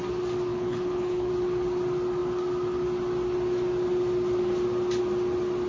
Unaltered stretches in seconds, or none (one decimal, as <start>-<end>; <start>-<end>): 0.0-0.5; 1.3-5.7